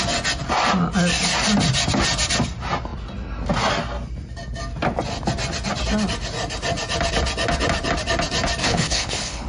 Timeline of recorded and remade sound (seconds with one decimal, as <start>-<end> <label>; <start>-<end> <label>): 0.0-8.6 recorded; 8.6-9.5 remade